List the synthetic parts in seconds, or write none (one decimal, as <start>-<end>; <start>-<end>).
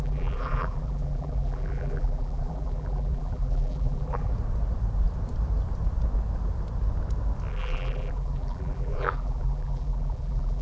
0.0-4.3; 7.5-10.6